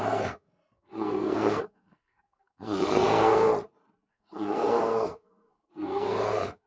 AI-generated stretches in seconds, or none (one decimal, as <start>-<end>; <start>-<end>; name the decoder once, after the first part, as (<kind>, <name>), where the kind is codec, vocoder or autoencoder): 0.0-3.5 (codec, SNAC); 4.1-6.7